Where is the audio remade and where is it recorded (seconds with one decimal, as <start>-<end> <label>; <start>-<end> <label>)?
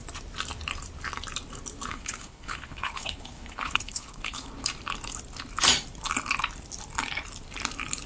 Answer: 0.0-1.9 recorded; 1.9-4.5 remade; 4.5-8.1 recorded